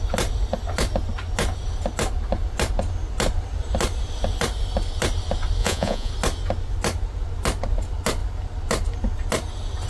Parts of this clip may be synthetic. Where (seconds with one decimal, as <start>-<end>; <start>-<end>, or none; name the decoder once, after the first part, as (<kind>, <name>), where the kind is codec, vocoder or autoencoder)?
5.6-6.1 (vocoder, Vocos)